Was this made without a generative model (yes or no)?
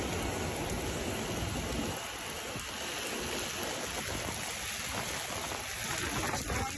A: yes